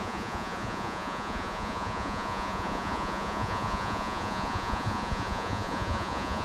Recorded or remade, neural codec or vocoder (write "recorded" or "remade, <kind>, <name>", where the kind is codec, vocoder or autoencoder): remade, vocoder, Vocos